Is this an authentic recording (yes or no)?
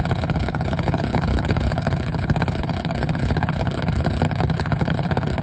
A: no